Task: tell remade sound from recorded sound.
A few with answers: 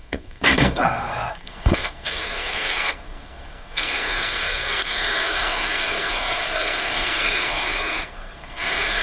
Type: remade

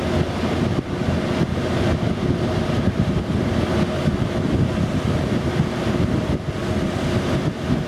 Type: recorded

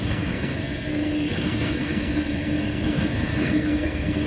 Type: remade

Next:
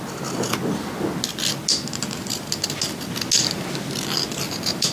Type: recorded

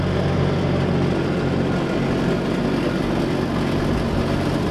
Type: recorded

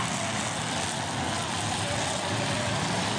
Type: recorded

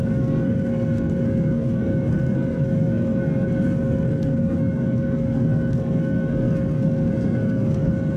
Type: remade